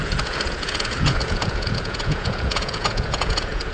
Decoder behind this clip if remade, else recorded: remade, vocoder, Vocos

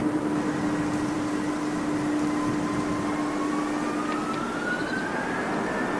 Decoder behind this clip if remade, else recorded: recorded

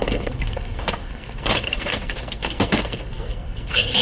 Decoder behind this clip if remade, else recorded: remade, codec, SNAC